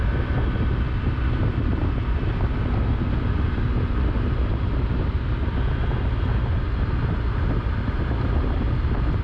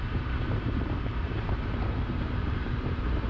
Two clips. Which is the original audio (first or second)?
first